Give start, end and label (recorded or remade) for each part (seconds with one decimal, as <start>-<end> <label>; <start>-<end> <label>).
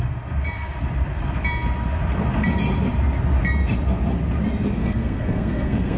0.0-4.8 recorded; 4.8-6.0 remade